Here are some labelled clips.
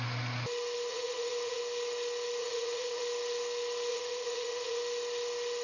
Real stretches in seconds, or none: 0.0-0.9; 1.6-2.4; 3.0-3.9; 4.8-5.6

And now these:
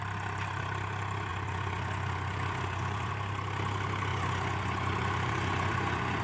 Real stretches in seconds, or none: 0.0-1.3; 3.1-4.1

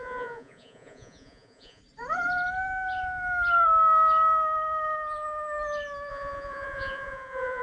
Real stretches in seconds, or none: 1.8-6.1

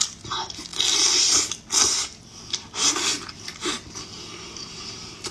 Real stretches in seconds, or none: 0.0-5.3

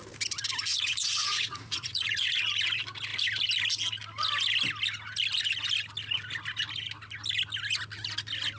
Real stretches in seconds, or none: 0.0-0.7; 2.4-8.6